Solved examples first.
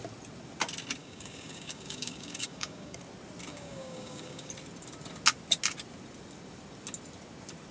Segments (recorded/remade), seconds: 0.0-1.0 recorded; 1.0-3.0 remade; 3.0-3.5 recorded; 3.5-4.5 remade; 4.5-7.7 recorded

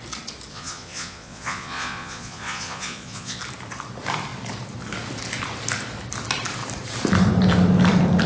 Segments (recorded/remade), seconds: 0.0-0.5 recorded; 0.5-3.4 remade; 3.4-8.3 recorded

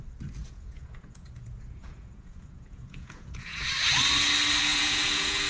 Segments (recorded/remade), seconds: 0.0-0.4 recorded; 0.4-3.7 remade; 3.7-4.7 recorded; 4.7-5.5 remade

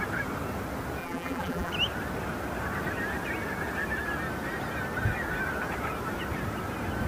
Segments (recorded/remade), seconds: 0.0-1.0 recorded; 1.0-1.7 remade; 1.7-7.1 recorded

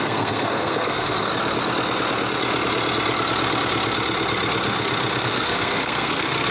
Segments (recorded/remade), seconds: 0.0-1.3 remade; 1.3-5.2 recorded; 5.2-6.5 remade

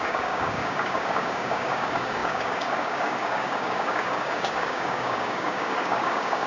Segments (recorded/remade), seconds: 0.0-6.5 remade

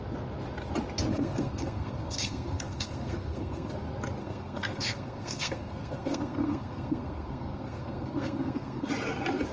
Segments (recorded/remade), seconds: 0.0-1.1 recorded; 1.1-3.7 remade; 3.7-4.2 recorded; 4.2-8.9 remade; 8.9-9.5 recorded

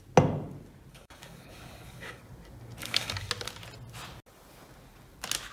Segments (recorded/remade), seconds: 0.0-0.9 recorded; 0.9-2.2 remade; 2.2-2.8 recorded; 2.8-3.3 remade; 3.3-5.5 recorded